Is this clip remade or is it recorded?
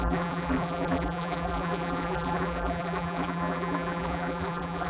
remade